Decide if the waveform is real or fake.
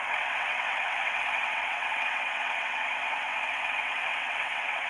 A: fake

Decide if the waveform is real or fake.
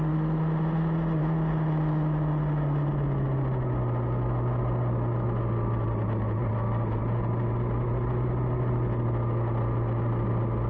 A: real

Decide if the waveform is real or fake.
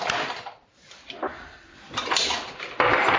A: fake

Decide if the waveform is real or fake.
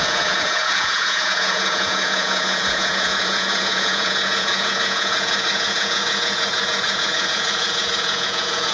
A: fake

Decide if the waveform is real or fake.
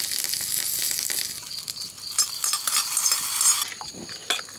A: real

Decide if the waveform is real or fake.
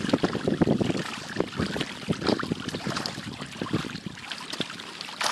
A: real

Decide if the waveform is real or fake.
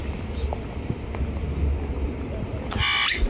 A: real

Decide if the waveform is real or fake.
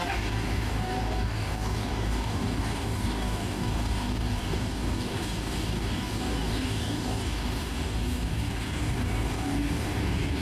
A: fake